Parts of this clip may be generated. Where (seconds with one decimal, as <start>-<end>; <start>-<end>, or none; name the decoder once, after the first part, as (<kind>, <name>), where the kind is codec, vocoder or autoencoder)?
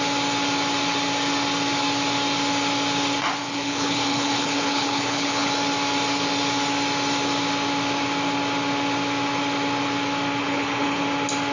3.4-5.5 (codec, HILCodec); 10.4-11.0